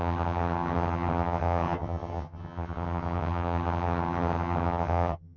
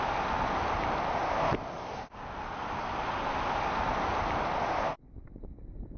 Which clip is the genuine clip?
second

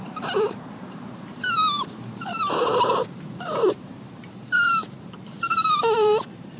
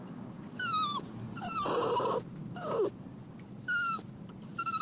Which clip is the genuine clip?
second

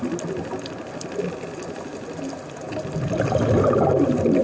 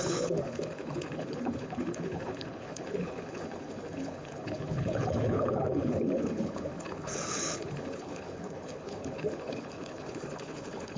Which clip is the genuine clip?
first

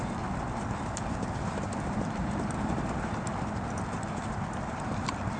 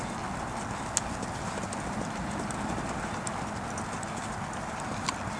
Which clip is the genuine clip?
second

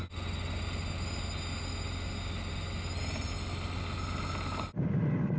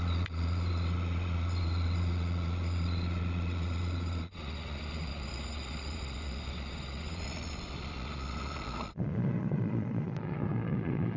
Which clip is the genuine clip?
first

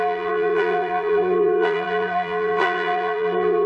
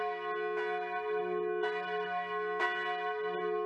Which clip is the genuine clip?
second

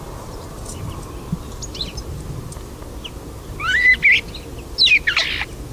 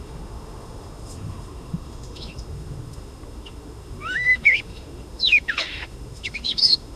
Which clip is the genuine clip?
first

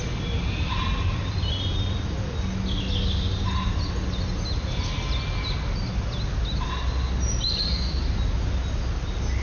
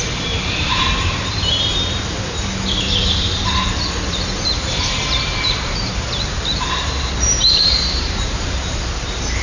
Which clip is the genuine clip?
first